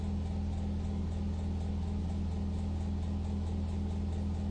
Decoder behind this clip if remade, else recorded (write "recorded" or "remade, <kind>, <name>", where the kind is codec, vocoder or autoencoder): recorded